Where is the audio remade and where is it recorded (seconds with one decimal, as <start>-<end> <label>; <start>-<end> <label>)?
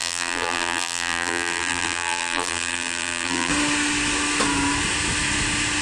0.0-3.5 remade; 3.5-5.8 recorded